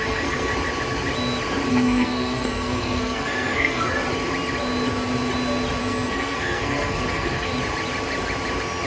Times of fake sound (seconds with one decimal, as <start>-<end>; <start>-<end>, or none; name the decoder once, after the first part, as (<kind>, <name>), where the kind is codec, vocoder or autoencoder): 0.0-0.5 (codec, SNAC); 1.7-4.0; 5.8-7.5